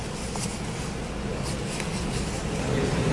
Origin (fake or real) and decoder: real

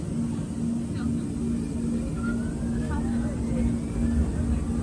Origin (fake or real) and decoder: real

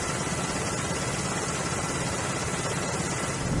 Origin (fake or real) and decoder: real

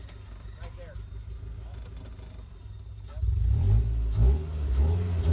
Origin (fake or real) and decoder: real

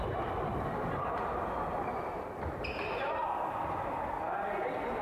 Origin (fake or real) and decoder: real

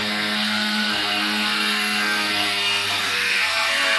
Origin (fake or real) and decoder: fake, codec, SNAC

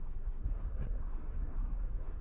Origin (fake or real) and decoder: fake, codec, SNAC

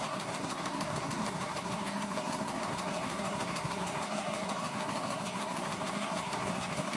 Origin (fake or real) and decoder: fake, codec, SNAC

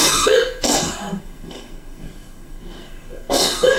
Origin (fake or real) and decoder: fake, codec, SNAC